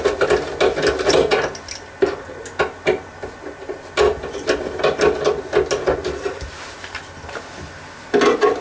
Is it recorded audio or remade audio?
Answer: recorded